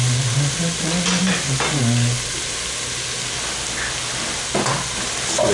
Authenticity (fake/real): real